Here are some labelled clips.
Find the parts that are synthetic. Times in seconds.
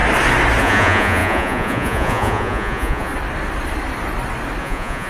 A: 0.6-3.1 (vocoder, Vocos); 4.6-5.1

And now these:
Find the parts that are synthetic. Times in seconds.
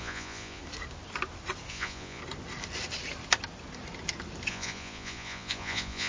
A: 0.0-0.6 (vocoder, Vocos); 1.7-2.2; 4.5-6.1